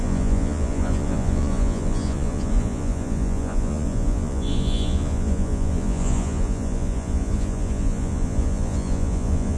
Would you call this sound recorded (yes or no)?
no